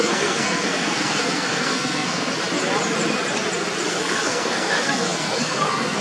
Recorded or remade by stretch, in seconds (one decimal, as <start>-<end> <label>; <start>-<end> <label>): 0.0-2.3 remade; 2.3-3.9 recorded; 3.9-6.0 remade